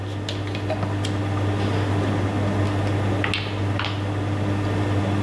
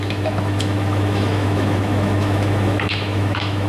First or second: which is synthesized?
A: second